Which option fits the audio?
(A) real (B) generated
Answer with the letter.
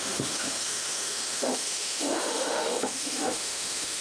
B